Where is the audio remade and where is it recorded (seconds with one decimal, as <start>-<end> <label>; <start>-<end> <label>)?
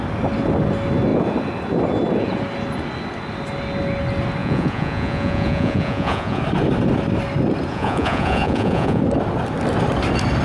0.0-4.4 recorded; 4.4-6.4 remade; 6.4-7.7 recorded; 7.7-9.0 remade; 9.0-10.4 recorded